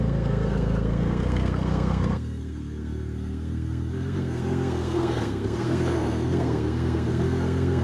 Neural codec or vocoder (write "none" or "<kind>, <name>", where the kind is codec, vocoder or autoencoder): codec, SNAC